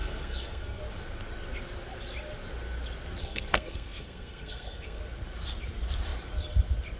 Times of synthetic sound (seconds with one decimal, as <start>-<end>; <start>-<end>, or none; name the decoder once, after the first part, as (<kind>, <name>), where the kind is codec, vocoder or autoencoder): 0.0-0.8 (codec, SNAC); 3.2-5.0